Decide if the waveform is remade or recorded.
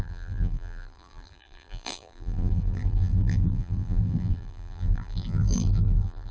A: remade